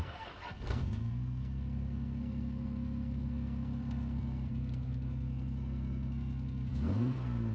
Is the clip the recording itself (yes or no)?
no